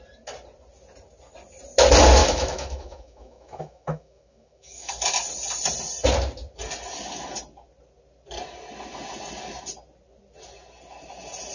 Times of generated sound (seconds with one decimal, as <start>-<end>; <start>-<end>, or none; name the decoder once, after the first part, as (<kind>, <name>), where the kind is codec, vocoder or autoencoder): 2.2-4.9 (autoencoder, DAC-VAE)